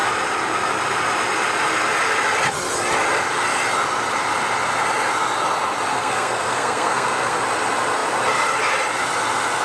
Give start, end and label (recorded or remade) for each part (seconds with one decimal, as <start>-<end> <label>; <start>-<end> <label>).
0.0-5.9 recorded; 5.9-7.4 remade; 7.4-9.6 recorded